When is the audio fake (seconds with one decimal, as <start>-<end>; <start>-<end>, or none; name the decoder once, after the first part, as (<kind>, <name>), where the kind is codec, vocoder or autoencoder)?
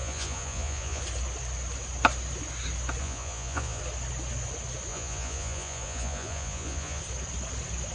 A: 0.0-1.0 (vocoder, Vocos); 3.0-3.8; 4.9-7.0